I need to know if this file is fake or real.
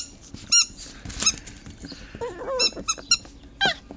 real